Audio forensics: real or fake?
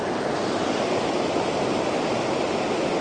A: real